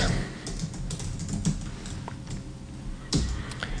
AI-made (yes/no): no